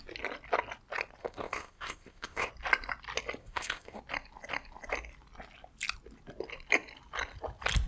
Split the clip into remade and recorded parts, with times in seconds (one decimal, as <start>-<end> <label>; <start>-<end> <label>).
0.0-1.2 recorded; 1.2-2.5 remade; 2.5-3.4 recorded; 3.4-4.0 remade; 4.0-7.9 recorded